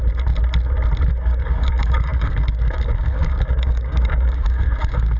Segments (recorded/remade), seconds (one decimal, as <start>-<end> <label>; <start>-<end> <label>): 0.0-1.1 recorded; 1.1-5.2 remade